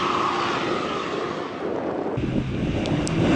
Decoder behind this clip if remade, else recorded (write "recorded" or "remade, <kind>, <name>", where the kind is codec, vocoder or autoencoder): recorded